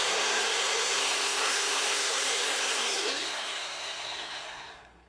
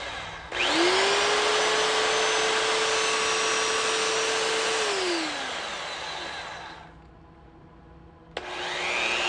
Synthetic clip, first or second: first